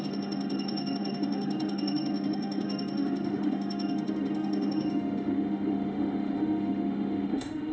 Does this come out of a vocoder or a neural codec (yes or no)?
yes